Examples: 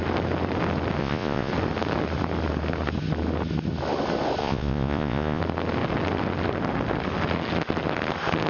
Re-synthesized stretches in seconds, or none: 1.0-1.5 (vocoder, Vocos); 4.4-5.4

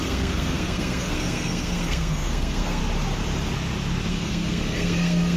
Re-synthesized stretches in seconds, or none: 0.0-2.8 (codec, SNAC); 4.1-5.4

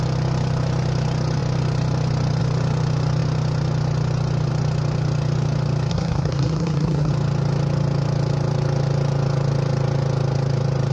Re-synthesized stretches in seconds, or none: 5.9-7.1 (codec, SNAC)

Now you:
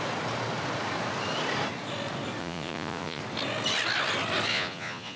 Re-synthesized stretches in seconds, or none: 2.4-3.2 (vocoder, Vocos); 4.5-5.2

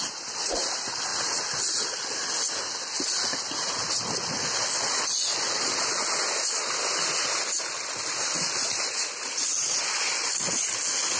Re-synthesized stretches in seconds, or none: none

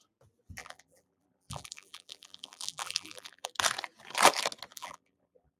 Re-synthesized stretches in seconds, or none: 0.6-3.5 (vocoder, BigVGAN v2); 4.7-5.6